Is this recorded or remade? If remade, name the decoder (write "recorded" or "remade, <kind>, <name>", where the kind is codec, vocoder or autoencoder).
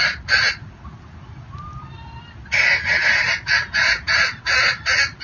recorded